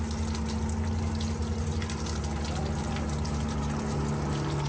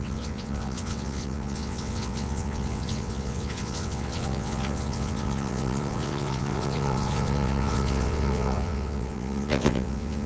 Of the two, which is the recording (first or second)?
first